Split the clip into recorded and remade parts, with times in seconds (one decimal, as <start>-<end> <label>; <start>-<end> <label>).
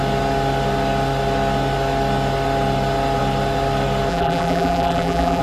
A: 0.0-4.1 recorded; 4.1-5.4 remade